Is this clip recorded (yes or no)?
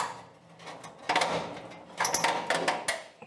yes